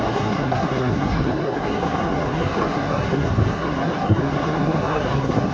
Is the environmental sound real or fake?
fake